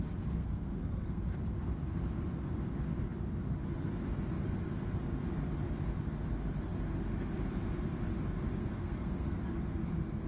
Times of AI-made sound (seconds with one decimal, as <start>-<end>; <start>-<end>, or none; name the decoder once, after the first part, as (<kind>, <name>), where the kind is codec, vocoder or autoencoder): 0.4-1.2 (codec, SNAC); 8.6-9.4